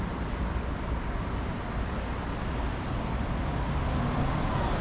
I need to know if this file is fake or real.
real